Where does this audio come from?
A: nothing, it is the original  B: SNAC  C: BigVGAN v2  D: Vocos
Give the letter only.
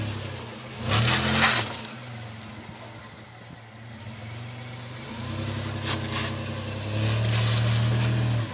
A